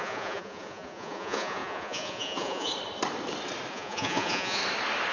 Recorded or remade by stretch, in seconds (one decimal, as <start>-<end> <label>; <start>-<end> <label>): 0.0-2.7 remade; 2.7-3.7 recorded; 3.7-4.6 remade; 4.6-5.1 recorded